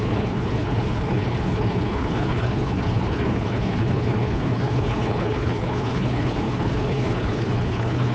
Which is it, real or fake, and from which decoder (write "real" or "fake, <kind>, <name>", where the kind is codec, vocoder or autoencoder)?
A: fake, codec, HILCodec